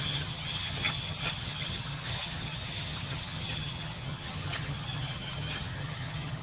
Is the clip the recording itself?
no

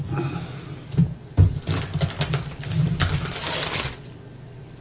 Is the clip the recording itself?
yes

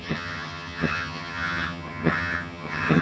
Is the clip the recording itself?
no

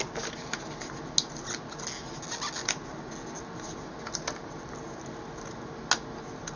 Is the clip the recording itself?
yes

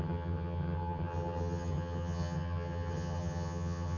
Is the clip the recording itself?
no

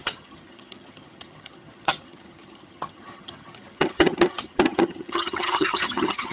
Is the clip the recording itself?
no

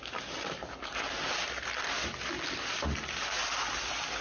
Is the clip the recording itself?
yes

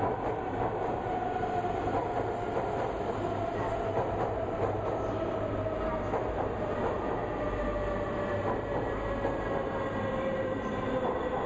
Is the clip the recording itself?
yes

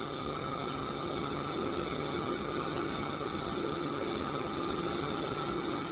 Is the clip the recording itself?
no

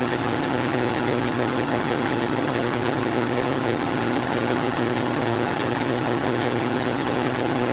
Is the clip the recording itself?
no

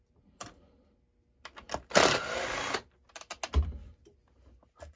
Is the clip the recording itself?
yes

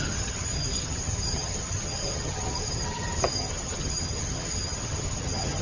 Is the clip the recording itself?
no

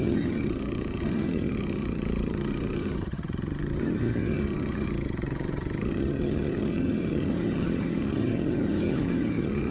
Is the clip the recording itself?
no